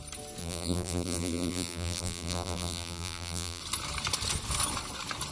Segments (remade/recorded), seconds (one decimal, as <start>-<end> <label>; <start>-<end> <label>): 0.0-0.4 recorded; 0.4-3.6 remade; 3.6-5.3 recorded